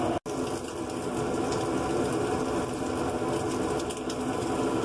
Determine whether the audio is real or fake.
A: real